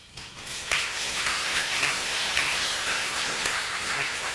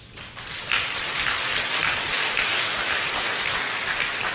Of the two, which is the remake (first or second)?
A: first